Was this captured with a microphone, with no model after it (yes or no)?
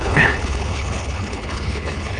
no